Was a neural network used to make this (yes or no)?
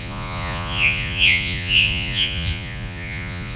yes